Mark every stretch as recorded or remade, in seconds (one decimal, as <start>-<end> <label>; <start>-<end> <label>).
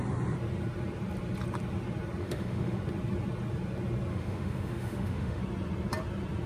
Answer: 0.0-2.2 recorded; 2.2-2.8 remade; 2.8-4.1 recorded; 4.1-5.4 remade; 5.4-6.5 recorded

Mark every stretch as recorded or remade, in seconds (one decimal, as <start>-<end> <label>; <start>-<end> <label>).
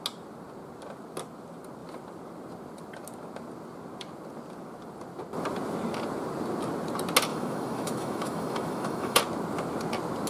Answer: 0.0-7.3 recorded; 7.3-9.2 remade; 9.2-10.3 recorded